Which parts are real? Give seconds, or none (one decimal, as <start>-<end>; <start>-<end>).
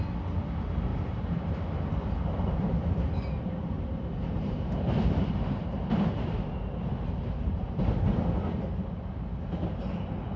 0.0-0.9; 1.6-4.3; 7.8-10.4